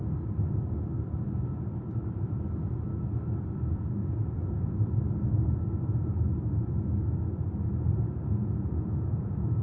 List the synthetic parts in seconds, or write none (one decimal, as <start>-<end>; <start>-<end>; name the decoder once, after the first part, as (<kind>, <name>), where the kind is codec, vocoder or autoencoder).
4.0-4.7 (vocoder, Vocos); 8.4-9.6